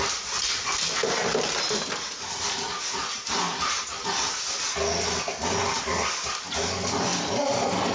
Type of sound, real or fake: real